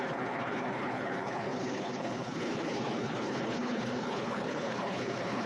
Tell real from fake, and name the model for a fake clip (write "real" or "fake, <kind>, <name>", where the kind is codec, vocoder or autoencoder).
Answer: fake, codec, HILCodec